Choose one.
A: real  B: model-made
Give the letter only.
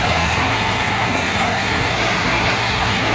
B